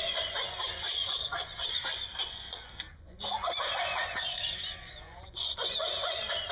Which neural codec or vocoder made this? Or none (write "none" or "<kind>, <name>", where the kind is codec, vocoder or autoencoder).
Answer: vocoder, Vocos